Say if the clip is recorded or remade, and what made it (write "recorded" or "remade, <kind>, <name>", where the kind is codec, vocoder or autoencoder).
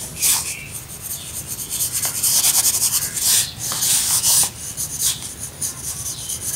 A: recorded